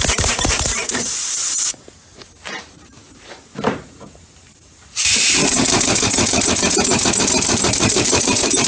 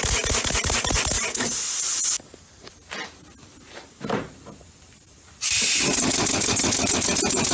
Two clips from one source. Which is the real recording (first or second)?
second